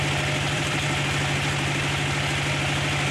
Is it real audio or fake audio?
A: real